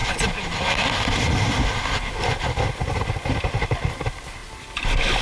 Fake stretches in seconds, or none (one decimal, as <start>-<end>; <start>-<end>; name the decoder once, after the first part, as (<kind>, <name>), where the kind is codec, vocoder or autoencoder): none